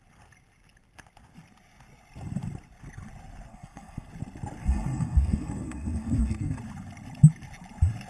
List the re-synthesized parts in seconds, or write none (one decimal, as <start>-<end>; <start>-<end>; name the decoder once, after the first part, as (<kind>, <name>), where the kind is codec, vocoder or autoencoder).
3.5-4.1 (codec, SNAC); 4.6-6.6